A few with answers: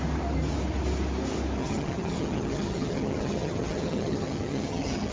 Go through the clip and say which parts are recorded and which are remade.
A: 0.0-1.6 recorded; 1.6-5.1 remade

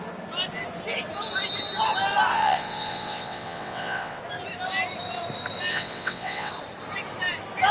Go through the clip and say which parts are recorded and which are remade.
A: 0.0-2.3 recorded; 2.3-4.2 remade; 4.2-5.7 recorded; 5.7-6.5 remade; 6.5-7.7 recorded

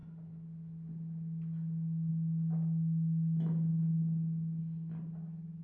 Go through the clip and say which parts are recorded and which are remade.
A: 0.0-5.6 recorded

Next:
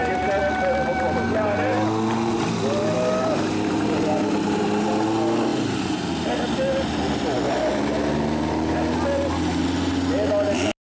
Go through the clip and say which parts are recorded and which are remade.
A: 0.0-10.9 recorded

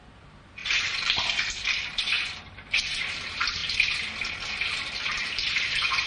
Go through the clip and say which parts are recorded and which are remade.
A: 0.0-3.6 remade; 3.6-4.5 recorded; 4.5-6.1 remade